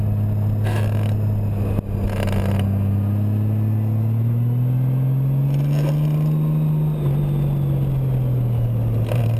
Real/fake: real